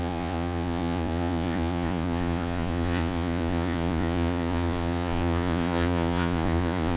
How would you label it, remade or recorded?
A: remade